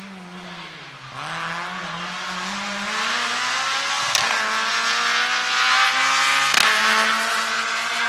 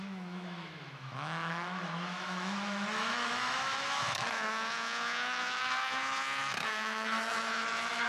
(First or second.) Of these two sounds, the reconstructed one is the second